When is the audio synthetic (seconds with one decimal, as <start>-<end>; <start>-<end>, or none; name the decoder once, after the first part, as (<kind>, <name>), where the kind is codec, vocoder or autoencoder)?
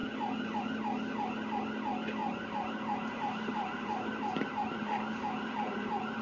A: 2.2-6.2 (vocoder, BigVGAN v2)